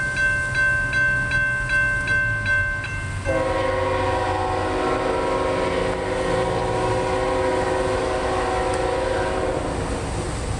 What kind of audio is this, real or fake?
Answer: real